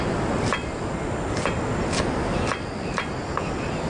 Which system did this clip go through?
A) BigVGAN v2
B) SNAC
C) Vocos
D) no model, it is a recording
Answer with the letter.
D